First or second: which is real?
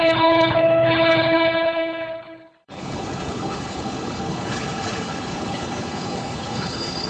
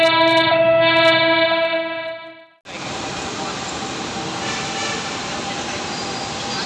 second